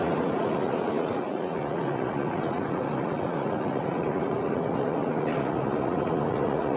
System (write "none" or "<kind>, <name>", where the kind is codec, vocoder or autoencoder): vocoder, Vocos